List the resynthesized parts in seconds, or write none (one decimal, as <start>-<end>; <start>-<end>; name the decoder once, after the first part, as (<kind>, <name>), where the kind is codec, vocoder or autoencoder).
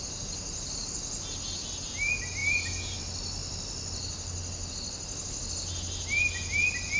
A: none